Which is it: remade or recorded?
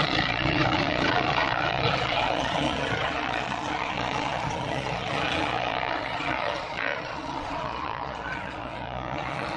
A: remade